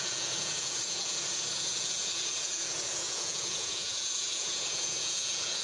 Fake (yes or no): yes